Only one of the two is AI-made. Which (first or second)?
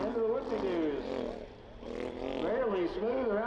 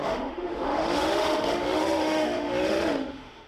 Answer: second